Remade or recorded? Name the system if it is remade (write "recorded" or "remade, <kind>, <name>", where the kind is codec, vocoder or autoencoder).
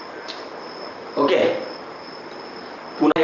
recorded